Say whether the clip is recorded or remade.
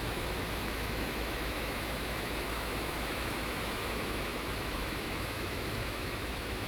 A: remade